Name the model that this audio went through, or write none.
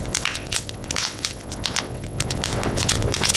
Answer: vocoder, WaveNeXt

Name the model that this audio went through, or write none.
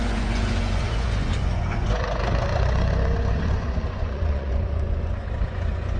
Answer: vocoder, Vocos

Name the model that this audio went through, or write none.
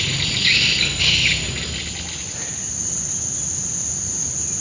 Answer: none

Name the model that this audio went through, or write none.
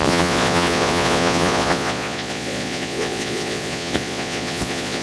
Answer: vocoder, Vocos